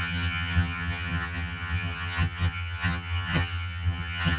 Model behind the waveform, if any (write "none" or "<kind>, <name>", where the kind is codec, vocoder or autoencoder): vocoder, HiFi-GAN